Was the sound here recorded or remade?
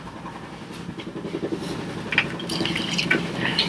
recorded